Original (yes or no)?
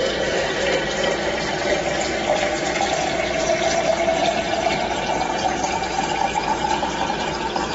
no